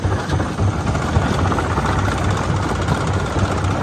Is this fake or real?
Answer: real